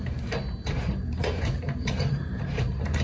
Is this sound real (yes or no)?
no